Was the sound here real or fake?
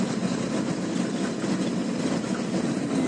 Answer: real